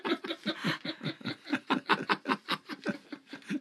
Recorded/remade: recorded